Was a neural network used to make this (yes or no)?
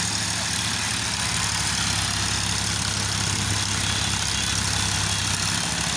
no